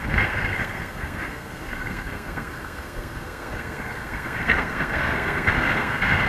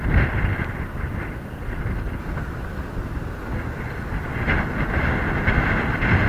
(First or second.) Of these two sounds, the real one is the second